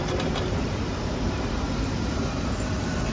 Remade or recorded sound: remade